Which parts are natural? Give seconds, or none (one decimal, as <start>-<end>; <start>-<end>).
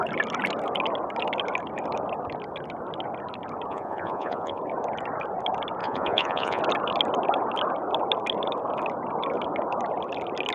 0.0-3.7; 4.6-5.8; 6.6-10.5